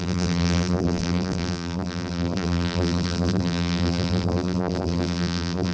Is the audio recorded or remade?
remade